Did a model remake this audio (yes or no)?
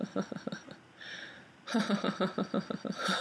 no